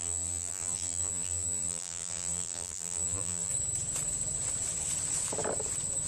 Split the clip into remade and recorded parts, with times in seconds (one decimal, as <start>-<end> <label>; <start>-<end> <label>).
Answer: 0.0-3.5 remade; 3.5-6.1 recorded